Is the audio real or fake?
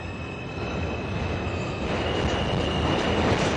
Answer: real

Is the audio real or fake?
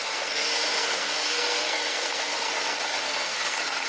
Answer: fake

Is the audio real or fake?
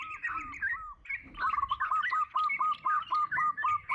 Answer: fake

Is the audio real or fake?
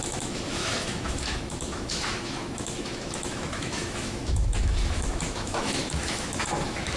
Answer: fake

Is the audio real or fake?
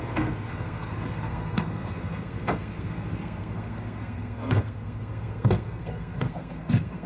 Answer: fake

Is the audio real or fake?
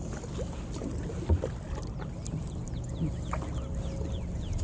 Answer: real